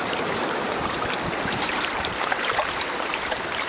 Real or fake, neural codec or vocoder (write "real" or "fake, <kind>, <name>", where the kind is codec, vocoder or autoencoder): fake, vocoder, BigVGAN v2